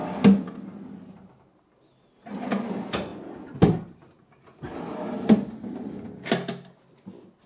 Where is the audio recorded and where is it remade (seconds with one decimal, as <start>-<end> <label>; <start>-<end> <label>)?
0.0-7.5 recorded